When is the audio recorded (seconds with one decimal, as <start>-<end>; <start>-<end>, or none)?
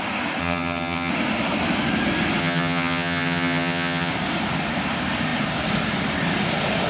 0.0-0.4; 1.1-2.4; 4.1-6.9